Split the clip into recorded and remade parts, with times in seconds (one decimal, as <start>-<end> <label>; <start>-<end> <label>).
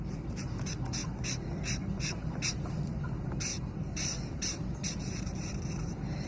0.0-3.5 remade; 3.5-4.3 recorded; 4.3-6.3 remade